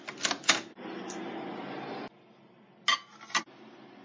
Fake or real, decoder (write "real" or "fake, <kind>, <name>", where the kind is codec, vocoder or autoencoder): real